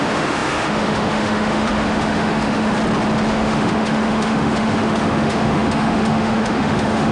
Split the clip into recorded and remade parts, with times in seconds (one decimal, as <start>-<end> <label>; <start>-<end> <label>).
0.0-2.7 remade; 2.7-3.3 recorded; 3.3-7.1 remade